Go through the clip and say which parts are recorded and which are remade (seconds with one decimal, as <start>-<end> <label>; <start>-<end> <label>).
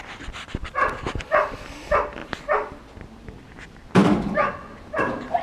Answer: 0.0-0.6 recorded; 0.6-1.2 remade; 1.2-4.0 recorded; 4.0-4.5 remade; 4.5-5.4 recorded